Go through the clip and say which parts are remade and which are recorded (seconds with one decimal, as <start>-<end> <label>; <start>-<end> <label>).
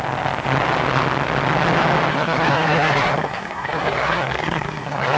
0.0-2.1 recorded; 2.1-5.2 remade